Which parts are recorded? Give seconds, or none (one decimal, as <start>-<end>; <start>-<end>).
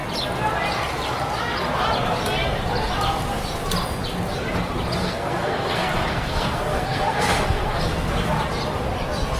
0.0-5.0; 7.8-9.4